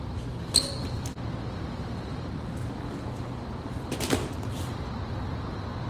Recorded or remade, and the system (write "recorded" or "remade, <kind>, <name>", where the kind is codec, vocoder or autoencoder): remade, vocoder, BigVGAN v2